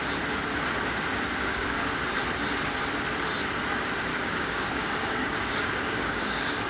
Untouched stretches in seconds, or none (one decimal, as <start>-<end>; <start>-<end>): 0.0-1.5; 2.2-4.1